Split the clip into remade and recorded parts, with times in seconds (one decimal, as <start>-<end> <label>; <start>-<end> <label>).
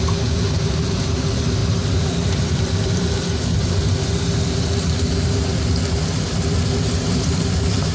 0.0-7.9 recorded